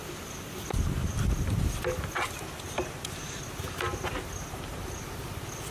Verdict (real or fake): real